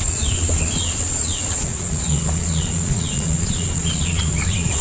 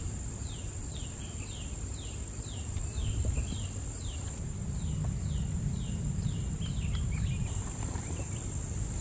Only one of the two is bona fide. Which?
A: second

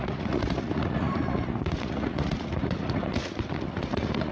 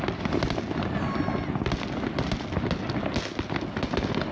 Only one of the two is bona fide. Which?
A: second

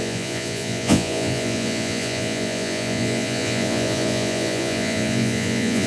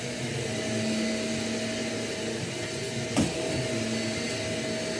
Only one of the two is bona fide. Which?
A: second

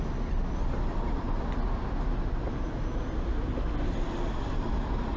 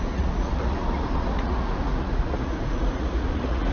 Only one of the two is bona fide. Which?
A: first